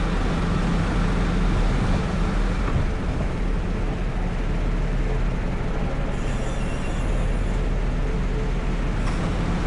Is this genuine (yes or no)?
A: yes